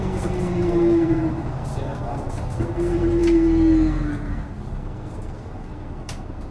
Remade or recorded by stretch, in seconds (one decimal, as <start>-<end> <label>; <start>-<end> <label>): 0.0-6.5 remade